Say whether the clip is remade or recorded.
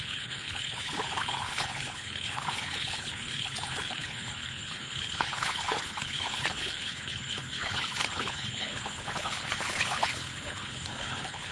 remade